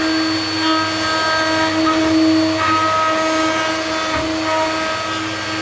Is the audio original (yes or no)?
yes